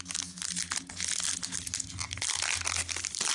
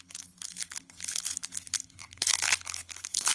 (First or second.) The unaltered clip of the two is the first